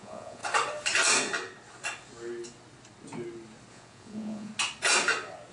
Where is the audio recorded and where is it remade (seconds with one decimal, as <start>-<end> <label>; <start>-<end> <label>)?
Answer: 0.0-0.4 remade; 0.4-3.7 recorded; 3.7-4.5 remade; 4.5-5.5 recorded